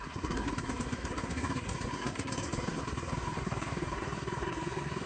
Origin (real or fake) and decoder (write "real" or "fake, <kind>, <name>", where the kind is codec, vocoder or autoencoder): fake, codec, SNAC